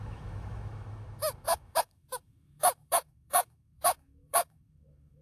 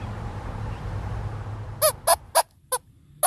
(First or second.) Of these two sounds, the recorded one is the second